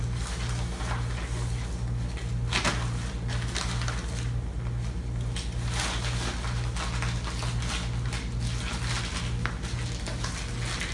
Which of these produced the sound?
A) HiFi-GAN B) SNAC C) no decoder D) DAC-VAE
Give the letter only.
C